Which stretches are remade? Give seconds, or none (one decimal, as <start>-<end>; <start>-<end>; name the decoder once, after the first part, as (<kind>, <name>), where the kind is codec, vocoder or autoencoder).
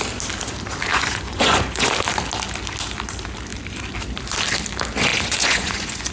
0.9-1.9 (vocoder, Vocos); 5.1-6.1